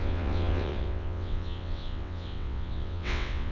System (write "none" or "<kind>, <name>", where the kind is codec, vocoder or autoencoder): vocoder, WaveNeXt